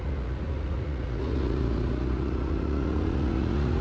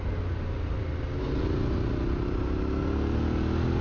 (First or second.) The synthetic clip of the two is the first